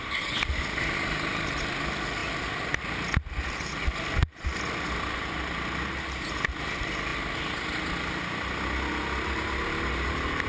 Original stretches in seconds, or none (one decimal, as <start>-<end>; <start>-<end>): 0.0-10.5